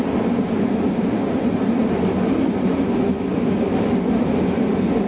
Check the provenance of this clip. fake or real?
real